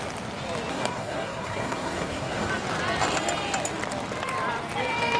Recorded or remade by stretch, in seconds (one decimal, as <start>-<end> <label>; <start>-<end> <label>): 0.0-0.7 recorded; 0.7-2.5 remade; 2.5-5.2 recorded